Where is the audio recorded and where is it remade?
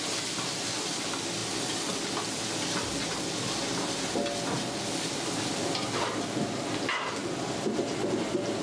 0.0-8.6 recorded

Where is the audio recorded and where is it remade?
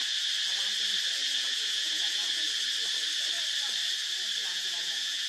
0.0-1.2 recorded; 1.2-2.4 remade; 2.4-4.4 recorded; 4.4-5.3 remade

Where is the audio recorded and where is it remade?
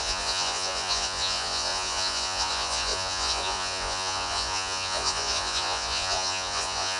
0.0-7.0 remade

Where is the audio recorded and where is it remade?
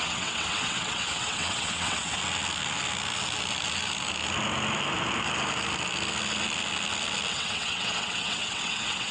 0.0-2.2 remade; 2.2-7.3 recorded; 7.3-9.1 remade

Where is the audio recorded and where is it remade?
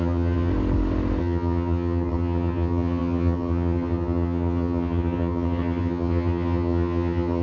0.0-0.5 remade; 0.5-1.2 recorded; 1.2-7.4 remade